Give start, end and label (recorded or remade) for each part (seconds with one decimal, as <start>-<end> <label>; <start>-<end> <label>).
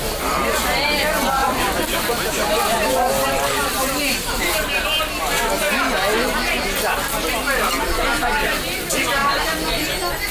0.0-1.4 recorded; 1.4-5.0 remade; 5.0-9.2 recorded; 9.2-9.7 remade; 9.7-10.3 recorded